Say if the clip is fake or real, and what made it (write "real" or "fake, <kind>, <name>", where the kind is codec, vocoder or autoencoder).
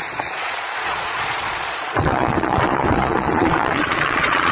fake, vocoder, Vocos